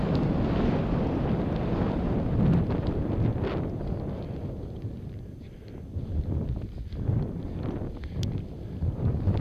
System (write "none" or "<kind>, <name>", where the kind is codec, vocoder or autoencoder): none